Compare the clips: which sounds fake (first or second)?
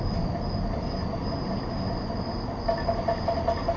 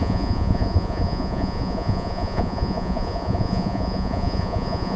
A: second